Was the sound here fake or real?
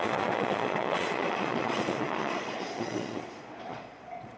fake